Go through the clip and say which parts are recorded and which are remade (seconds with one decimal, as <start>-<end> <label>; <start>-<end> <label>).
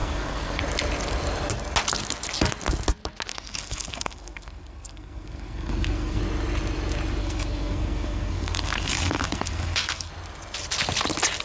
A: 0.0-0.6 remade; 0.6-3.3 recorded; 3.3-6.2 remade; 6.2-7.2 recorded; 7.2-10.1 remade; 10.1-11.4 recorded